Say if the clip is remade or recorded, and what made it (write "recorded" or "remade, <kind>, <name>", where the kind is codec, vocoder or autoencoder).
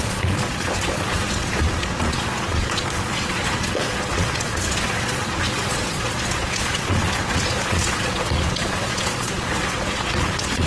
remade, vocoder, Vocos